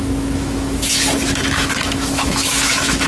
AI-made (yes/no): yes